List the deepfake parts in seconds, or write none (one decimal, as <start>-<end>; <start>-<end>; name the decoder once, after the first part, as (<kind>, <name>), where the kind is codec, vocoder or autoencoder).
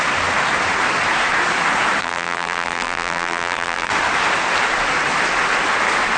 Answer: 2.0-3.9 (vocoder, BigVGAN v2)